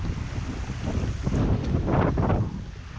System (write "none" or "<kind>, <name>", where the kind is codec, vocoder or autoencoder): none